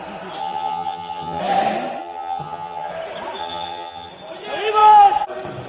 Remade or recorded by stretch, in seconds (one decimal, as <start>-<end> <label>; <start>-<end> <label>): 0.0-0.4 recorded; 0.4-1.4 remade; 1.4-2.0 recorded; 2.0-2.9 remade; 2.9-3.4 recorded; 3.4-4.1 remade; 4.1-5.7 recorded